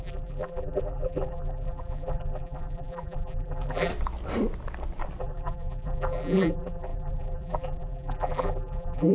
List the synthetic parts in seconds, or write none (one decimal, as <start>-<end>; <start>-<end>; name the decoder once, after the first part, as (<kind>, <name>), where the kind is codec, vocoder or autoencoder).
0.0-3.9 (vocoder, BigVGAN v2); 5.2-9.1